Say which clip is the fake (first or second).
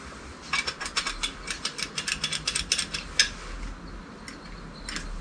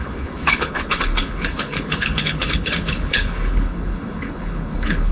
second